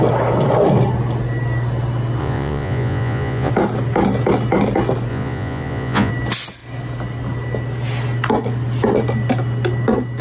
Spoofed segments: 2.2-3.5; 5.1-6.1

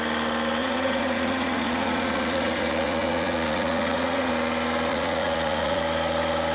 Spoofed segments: 0.6-4.3; 4.9-5.8

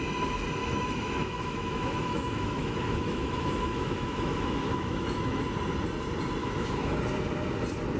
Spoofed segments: 0.6-5.4; 6.4-7.0

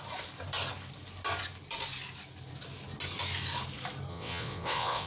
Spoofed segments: 4.1-5.1

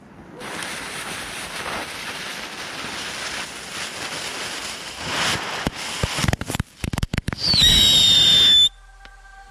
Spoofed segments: 6.2-8.4

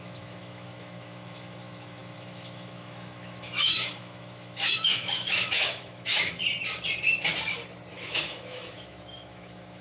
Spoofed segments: 0.0-6.4; 7.9-9.8

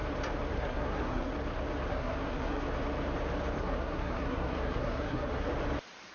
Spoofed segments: 0.5-1.3; 1.9-2.6; 3.6-5.5